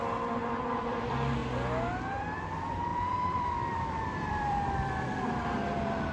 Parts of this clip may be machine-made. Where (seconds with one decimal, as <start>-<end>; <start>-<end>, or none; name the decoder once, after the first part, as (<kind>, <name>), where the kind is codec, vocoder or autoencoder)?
0.0-1.4 (vocoder, BigVGAN v2); 2.2-6.1